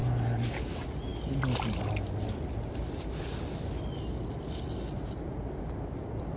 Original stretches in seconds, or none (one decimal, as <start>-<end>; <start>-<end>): 0.0-6.4